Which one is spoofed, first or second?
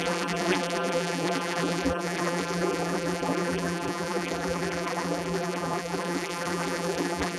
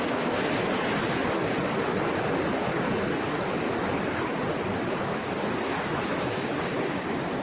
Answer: first